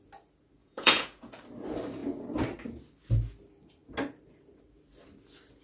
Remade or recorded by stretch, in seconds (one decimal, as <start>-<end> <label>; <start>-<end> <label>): 0.0-0.6 recorded; 0.6-1.3 remade; 1.3-5.6 recorded